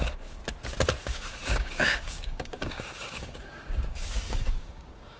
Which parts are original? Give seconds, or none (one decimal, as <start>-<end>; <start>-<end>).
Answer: 0.4-1.0